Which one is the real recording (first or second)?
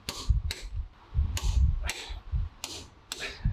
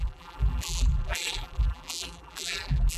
first